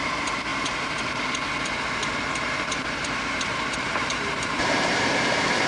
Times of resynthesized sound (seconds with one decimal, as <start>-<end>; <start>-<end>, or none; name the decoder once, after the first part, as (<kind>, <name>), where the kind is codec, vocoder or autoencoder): 0.5-1.5 (vocoder, BigVGAN v2); 2.0-5.7